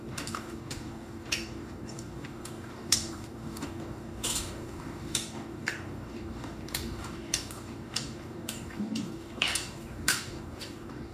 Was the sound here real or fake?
fake